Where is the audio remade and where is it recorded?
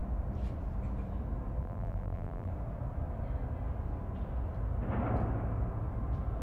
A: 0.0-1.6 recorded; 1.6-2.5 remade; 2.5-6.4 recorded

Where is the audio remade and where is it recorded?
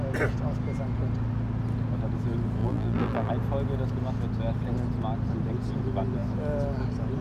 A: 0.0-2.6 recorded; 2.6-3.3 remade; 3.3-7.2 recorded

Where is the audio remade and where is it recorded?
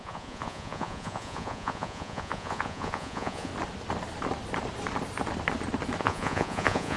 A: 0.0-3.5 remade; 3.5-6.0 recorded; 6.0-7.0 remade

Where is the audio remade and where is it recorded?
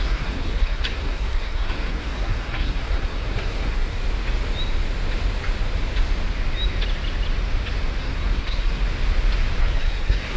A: 0.0-4.0 remade; 4.0-8.0 recorded; 8.0-8.9 remade; 8.9-9.6 recorded; 9.6-10.4 remade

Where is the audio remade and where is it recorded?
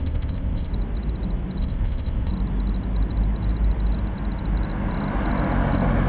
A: 0.0-0.7 remade; 0.7-1.6 recorded; 1.6-2.3 remade; 2.3-6.1 recorded